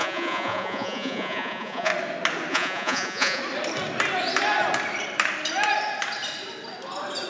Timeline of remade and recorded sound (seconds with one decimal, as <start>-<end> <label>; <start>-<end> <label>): 0.0-1.9 remade; 1.9-2.5 recorded; 2.5-3.4 remade; 3.4-7.3 recorded